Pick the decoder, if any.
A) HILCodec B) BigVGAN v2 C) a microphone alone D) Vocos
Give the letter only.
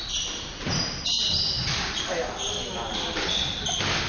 C